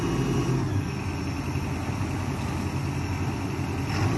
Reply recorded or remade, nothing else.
recorded